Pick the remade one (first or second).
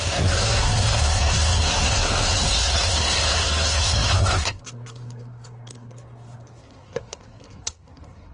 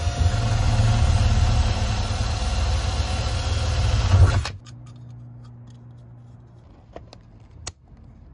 first